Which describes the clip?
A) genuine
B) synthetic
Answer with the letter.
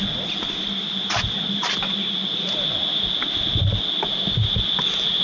A